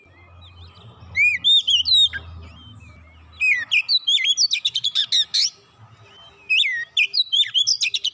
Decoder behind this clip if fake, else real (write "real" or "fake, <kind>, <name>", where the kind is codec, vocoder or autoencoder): real